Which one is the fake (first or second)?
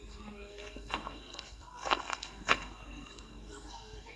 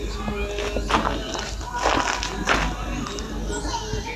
first